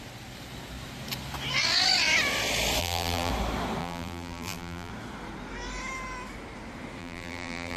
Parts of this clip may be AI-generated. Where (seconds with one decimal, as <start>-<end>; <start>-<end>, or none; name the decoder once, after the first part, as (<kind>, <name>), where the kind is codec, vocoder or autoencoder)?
2.8-3.3 (vocoder, BigVGAN v2); 3.8-4.9; 7.0-7.8